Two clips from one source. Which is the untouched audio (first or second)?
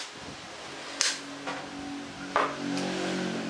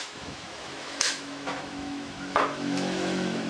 first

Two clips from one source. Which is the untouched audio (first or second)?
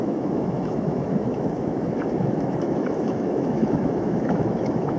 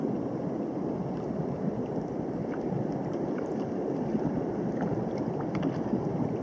second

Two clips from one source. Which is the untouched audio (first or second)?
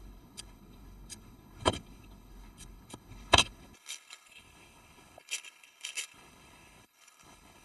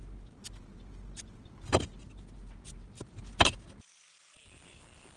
second